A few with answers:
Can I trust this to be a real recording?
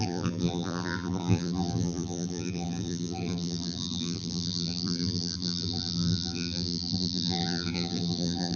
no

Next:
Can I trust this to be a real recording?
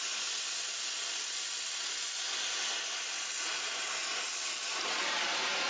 yes